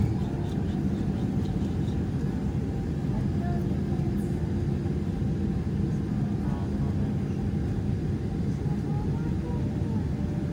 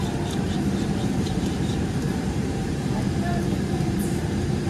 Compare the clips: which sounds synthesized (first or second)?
second